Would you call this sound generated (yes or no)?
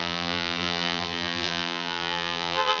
yes